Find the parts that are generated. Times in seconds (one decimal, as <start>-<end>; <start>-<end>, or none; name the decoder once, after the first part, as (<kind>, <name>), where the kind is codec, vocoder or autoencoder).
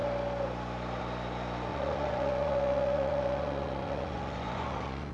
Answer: 1.7-5.1 (vocoder, Vocos)